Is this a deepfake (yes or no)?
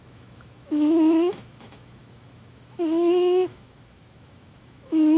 yes